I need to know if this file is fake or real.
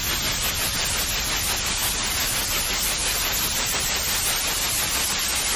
real